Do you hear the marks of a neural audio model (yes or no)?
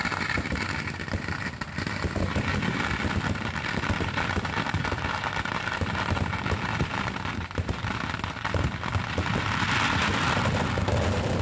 no